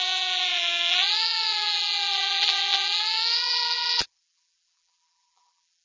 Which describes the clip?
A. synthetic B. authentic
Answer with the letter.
A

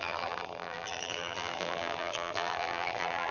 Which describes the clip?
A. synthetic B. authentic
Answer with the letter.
A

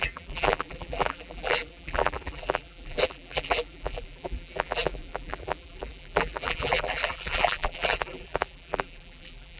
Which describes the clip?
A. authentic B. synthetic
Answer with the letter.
B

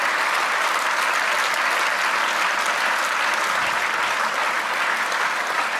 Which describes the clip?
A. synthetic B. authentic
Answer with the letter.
B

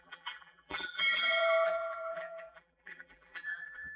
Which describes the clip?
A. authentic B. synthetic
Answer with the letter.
B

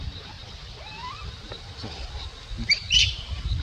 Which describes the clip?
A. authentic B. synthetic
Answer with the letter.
A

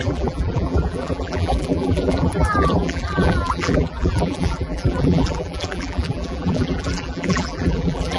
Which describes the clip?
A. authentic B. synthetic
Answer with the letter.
B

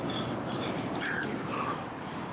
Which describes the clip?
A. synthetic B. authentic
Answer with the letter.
A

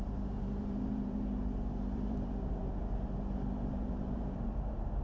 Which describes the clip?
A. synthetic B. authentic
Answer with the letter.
A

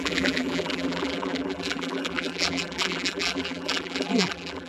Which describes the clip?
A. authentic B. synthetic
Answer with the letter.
B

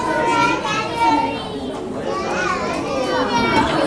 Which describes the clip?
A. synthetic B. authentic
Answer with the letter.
B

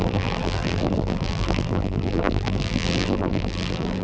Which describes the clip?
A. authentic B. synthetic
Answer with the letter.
B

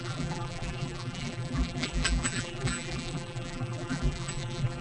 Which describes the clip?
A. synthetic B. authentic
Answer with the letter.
A